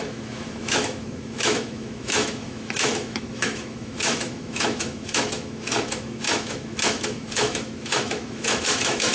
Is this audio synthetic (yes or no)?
yes